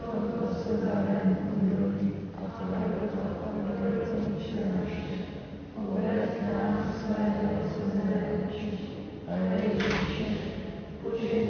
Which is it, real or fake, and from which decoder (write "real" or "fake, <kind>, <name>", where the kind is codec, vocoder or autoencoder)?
real